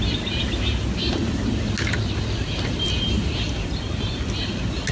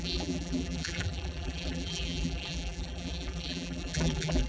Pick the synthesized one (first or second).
second